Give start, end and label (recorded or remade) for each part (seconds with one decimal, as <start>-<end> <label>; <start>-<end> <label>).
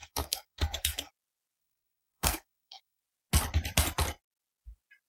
0.0-1.1 remade; 1.1-1.6 recorded; 1.6-3.0 remade; 3.0-5.1 recorded